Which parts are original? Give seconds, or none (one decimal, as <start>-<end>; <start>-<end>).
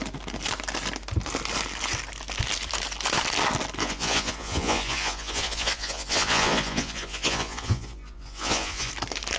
0.0-3.8; 8.9-9.4